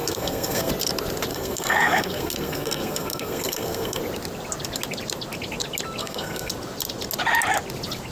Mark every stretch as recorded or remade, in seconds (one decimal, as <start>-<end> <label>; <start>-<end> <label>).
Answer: 0.0-0.7 remade; 0.7-1.3 recorded; 1.3-4.0 remade; 4.0-6.0 recorded; 6.0-6.5 remade; 6.5-8.1 recorded